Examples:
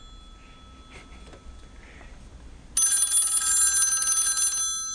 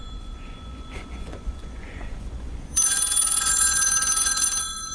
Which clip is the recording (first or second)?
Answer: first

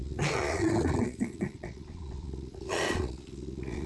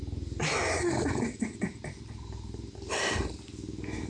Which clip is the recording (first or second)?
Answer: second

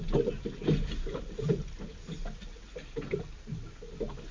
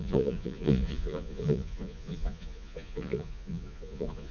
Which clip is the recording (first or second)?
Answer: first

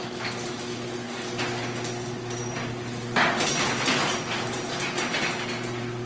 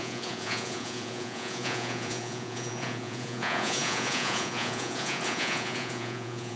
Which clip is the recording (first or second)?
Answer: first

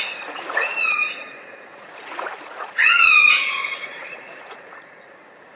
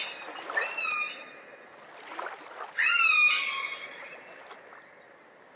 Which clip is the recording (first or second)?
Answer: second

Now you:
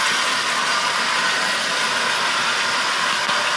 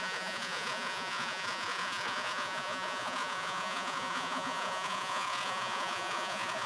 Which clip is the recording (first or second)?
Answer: first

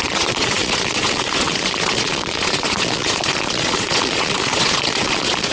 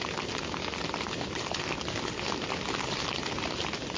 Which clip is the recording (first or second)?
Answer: second